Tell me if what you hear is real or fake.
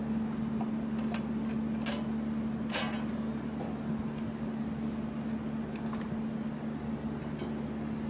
real